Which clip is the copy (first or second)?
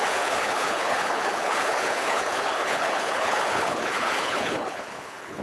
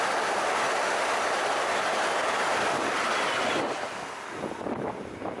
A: first